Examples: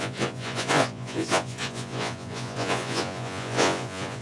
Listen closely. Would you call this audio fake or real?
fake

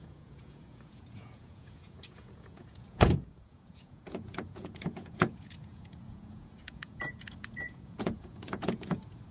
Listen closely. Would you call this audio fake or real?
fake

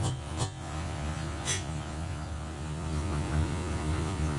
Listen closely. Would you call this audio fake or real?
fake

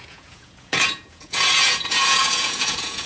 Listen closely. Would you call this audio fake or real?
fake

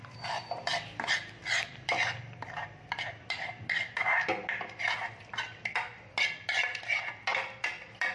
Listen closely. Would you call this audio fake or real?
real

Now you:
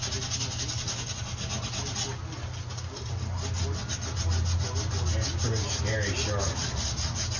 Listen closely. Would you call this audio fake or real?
real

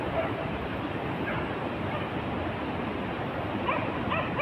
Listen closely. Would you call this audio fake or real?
real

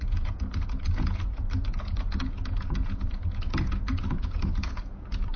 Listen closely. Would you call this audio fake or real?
fake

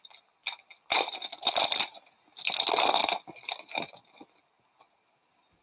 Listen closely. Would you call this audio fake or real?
real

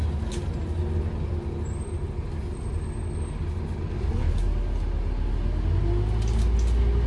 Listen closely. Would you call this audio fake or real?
real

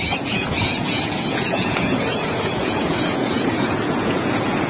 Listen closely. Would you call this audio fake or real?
fake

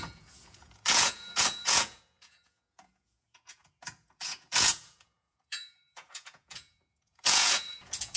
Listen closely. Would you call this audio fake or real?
fake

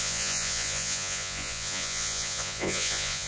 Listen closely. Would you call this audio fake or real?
fake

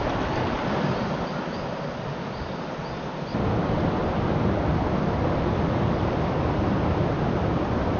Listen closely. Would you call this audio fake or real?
real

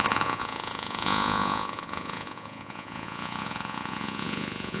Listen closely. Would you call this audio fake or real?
fake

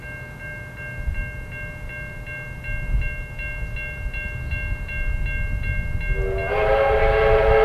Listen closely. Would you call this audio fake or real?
real